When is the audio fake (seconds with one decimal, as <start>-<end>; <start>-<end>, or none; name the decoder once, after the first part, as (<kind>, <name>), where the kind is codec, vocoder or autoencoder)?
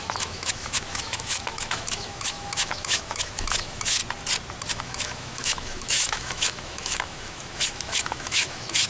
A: 0.0-4.0 (autoencoder, DAC-VAE); 4.7-8.9